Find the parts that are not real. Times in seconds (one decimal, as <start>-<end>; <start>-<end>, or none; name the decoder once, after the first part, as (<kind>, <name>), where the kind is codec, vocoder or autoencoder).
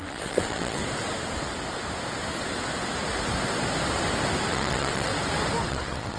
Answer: 0.0-0.8 (vocoder, WaveNeXt); 4.5-5.1; 5.7-6.2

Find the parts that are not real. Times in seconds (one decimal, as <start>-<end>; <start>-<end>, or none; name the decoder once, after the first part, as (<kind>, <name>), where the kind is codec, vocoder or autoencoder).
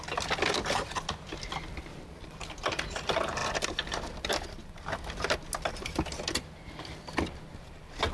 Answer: none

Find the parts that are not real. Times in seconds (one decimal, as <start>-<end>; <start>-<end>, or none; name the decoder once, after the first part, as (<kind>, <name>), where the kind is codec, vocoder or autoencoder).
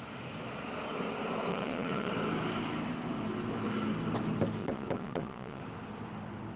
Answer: 1.5-2.1 (vocoder, Vocos); 4.6-5.6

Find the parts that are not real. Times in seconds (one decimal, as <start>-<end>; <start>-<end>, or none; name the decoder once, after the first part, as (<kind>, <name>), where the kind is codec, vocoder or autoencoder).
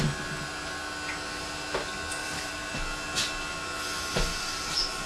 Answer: 2.2-2.7 (vocoder, BigVGAN v2); 4.3-5.1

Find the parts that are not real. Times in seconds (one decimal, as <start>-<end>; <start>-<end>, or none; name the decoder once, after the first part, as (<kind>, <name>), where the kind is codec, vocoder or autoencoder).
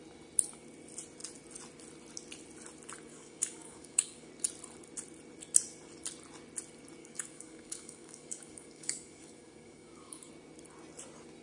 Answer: 3.1-4.3 (codec, DAC); 7.0-10.3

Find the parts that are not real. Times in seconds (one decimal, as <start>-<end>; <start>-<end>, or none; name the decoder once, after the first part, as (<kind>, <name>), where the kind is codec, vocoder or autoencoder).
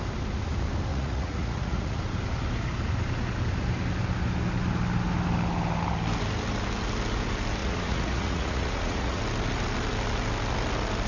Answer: 0.9-2.0 (vocoder, Vocos); 7.6-9.2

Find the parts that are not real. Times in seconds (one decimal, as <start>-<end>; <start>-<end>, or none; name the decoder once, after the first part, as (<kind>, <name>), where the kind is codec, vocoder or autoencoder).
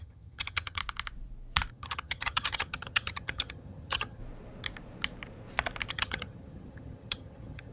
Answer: 0.0-0.8 (vocoder, HiFi-GAN); 1.7-4.2; 5.9-7.7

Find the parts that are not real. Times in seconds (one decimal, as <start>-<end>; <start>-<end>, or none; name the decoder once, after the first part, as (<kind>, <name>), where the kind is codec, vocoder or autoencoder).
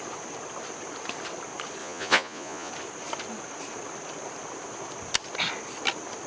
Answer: 1.8-2.7 (vocoder, Vocos)